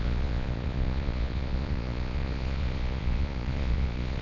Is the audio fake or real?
fake